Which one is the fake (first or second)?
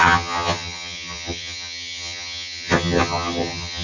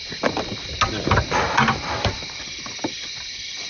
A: first